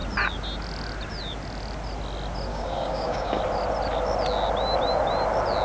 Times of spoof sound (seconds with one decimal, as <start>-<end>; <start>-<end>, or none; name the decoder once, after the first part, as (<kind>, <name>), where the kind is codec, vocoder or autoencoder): 2.5-3.4 (codec, DAC)